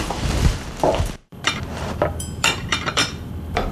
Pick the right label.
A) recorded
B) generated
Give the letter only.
B